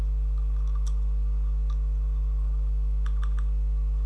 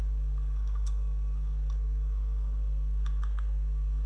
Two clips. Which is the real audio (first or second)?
first